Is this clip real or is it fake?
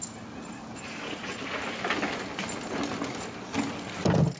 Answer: real